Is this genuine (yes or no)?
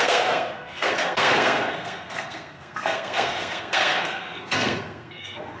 no